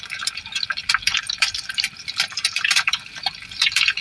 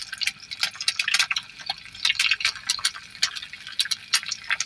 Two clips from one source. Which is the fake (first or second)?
first